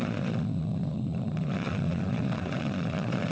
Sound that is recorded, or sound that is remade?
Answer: remade